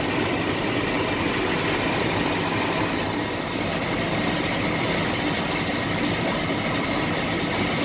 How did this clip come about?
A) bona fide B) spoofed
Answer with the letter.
A